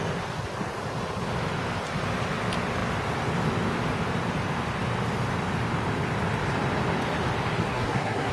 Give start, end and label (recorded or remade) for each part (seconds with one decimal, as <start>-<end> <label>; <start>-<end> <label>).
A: 0.0-7.6 recorded; 7.6-8.3 remade